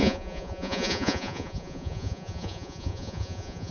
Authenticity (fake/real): fake